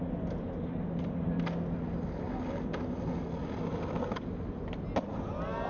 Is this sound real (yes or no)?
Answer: yes